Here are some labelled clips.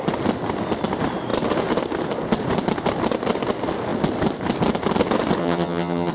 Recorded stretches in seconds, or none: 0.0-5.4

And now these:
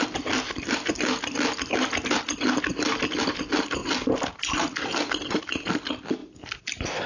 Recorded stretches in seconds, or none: 0.0-7.1

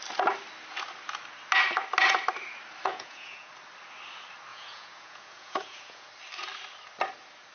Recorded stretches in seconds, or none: 0.0-2.9; 3.5-4.5; 6.1-7.5

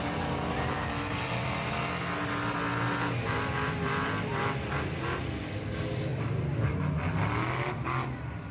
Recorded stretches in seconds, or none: 0.0-8.5

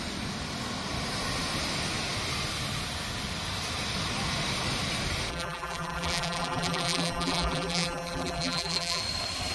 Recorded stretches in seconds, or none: 0.0-5.3; 9.0-9.5

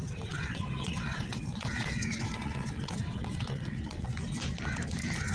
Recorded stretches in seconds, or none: 4.1-5.3

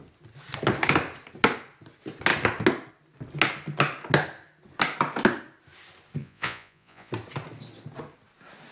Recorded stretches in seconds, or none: 0.0-6.2; 7.1-8.7